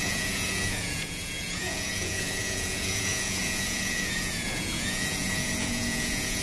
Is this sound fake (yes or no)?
yes